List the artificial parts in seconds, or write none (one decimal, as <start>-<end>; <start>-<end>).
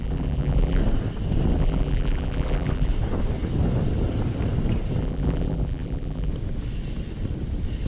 0.0-0.8; 1.6-2.9; 5.0-6.3